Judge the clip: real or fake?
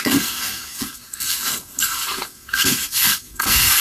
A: fake